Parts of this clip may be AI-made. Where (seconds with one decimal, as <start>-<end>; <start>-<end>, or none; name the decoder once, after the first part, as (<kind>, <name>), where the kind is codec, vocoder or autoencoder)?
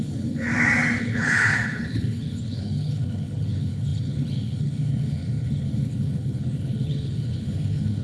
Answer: 0.0-0.5 (codec, HILCodec); 1.0-8.0